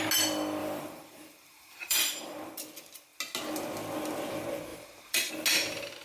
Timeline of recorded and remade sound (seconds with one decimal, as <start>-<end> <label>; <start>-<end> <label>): 0.0-0.6 recorded; 0.6-2.5 remade; 2.5-4.7 recorded; 4.7-5.3 remade; 5.3-6.0 recorded